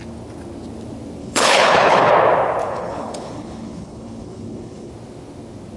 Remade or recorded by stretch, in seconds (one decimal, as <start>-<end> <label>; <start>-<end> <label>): 0.0-1.2 recorded; 1.2-2.1 remade; 2.1-2.6 recorded; 2.6-4.9 remade; 4.9-5.8 recorded